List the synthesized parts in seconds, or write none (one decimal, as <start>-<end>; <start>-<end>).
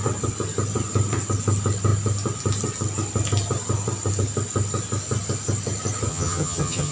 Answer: 6.1-6.9